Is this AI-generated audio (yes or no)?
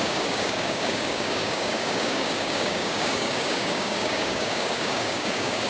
yes